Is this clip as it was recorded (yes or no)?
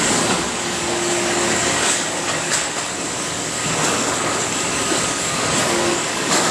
no